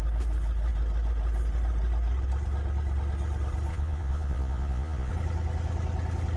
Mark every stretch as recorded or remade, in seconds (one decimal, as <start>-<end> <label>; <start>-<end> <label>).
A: 0.0-3.7 recorded; 3.7-5.1 remade; 5.1-6.4 recorded

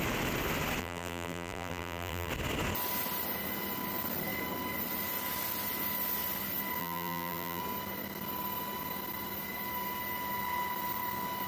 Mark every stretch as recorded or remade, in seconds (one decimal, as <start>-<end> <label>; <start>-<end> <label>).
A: 0.0-0.8 recorded; 0.8-2.3 remade; 2.3-6.8 recorded; 6.8-7.6 remade; 7.6-11.5 recorded